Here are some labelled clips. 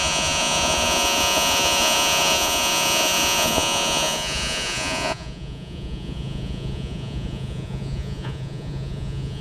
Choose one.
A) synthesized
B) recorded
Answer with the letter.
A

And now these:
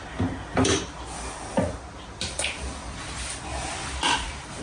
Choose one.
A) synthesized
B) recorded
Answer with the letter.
B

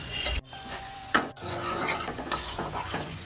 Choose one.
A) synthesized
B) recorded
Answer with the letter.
A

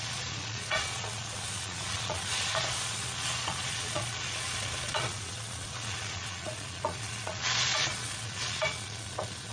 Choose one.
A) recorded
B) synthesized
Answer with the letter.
B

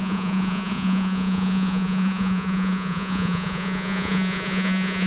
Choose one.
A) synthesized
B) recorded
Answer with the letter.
A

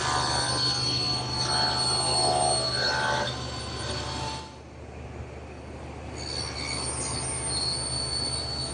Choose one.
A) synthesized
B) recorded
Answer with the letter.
B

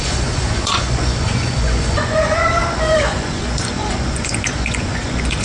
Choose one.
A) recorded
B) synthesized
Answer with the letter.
B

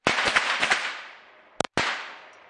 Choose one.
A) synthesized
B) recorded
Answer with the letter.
B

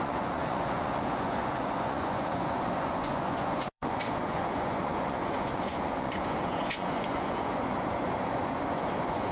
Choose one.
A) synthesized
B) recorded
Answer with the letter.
A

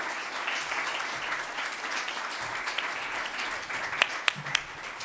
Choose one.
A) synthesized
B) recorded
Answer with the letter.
B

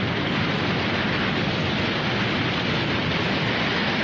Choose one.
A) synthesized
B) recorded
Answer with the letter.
B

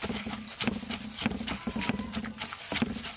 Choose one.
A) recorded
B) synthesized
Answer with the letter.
A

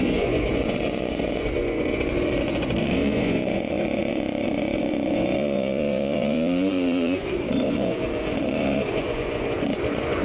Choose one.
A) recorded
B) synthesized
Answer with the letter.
B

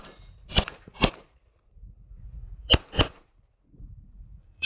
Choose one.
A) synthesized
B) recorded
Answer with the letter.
A